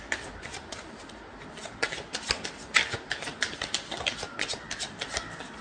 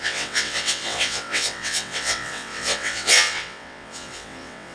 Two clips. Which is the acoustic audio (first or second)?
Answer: first